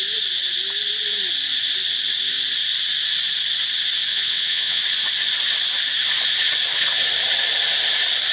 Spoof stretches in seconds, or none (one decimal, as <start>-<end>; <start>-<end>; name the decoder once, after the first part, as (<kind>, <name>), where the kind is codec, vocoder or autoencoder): 4.1-4.8 (vocoder, WaveNeXt)